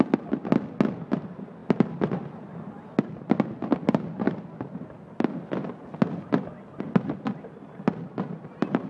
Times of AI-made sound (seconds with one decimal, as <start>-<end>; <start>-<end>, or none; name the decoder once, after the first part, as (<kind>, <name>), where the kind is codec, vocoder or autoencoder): none